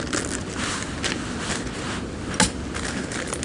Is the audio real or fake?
real